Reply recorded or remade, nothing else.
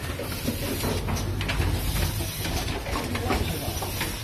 recorded